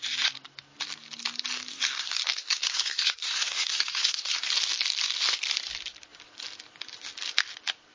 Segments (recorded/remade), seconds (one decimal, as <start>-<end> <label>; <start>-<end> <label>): 0.0-1.7 recorded; 1.7-4.5 remade; 4.5-7.9 recorded